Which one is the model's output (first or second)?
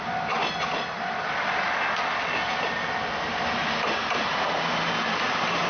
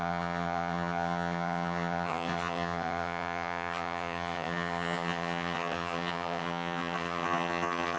second